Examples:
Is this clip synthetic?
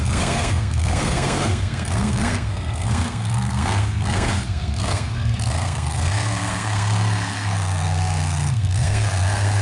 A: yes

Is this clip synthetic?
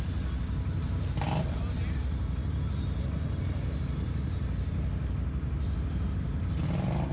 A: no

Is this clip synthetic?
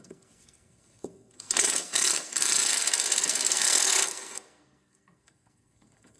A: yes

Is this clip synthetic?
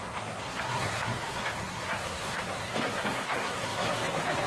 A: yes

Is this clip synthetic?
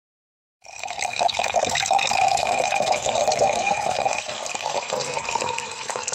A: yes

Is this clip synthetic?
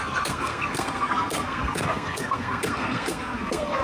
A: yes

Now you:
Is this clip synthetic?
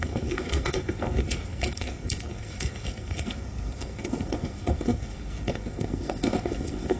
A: yes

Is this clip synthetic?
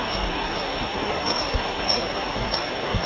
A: yes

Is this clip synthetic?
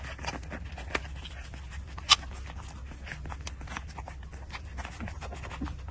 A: no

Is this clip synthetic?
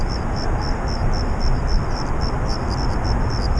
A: no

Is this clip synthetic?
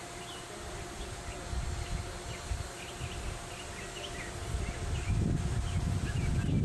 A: no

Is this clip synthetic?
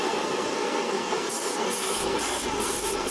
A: yes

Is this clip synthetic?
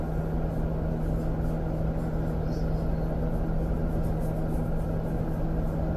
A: no